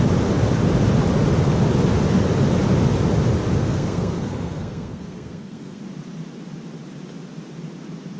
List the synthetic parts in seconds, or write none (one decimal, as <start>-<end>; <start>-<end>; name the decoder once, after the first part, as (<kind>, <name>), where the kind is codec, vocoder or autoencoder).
3.6-5.8 (codec, SNAC)